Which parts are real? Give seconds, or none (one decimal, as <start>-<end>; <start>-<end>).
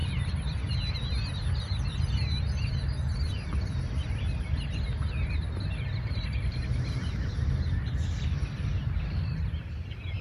0.0-10.2